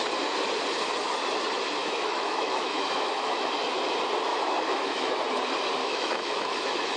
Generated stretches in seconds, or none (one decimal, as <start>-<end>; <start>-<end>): 1.8-3.5; 4.3-5.1; 5.8-7.0